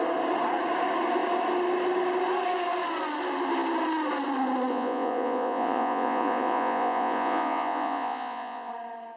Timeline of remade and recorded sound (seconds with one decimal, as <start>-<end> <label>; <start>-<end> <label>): 0.0-4.7 recorded; 4.7-8.7 remade; 8.7-9.2 recorded